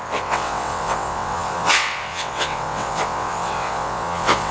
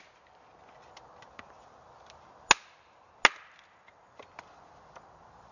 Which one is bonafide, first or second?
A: second